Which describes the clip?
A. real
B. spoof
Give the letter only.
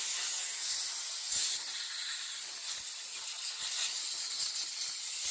A